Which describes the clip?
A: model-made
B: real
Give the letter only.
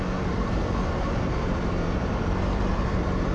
A